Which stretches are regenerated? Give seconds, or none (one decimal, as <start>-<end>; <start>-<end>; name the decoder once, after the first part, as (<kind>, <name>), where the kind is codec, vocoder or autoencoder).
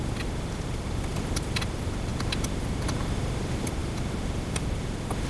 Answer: none